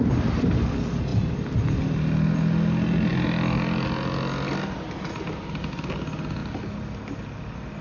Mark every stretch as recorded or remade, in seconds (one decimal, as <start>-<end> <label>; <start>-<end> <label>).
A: 0.0-7.8 recorded